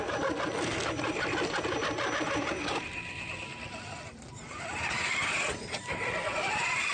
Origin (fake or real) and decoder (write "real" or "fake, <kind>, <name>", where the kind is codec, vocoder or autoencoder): real